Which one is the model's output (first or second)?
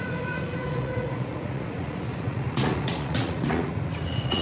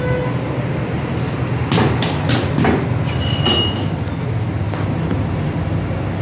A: first